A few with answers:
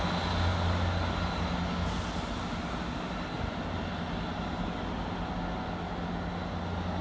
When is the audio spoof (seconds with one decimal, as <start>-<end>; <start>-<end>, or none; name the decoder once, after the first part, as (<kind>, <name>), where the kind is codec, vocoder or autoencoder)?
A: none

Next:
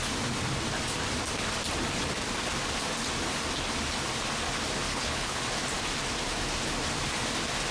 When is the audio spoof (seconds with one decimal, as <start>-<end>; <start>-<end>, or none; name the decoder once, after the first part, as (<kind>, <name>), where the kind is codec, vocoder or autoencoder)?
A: 4.9-5.4 (codec, HILCodec)

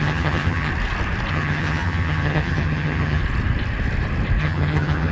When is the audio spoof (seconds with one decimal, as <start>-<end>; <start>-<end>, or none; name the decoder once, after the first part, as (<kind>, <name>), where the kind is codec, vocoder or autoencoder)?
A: 0.0-0.7 (vocoder, HiFi-GAN); 1.3-3.2; 4.4-5.1